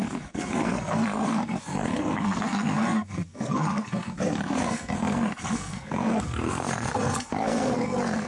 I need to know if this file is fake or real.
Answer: fake